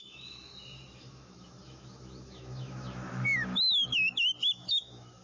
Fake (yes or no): yes